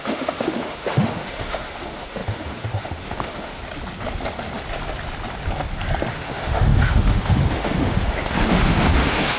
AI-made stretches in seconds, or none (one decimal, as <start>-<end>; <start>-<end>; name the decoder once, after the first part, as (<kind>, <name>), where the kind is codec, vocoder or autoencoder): 0.0-3.6 (autoencoder, DAC-VAE); 6.1-9.4